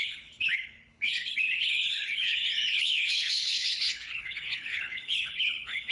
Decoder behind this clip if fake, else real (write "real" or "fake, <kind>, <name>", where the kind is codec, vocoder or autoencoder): fake, codec, HILCodec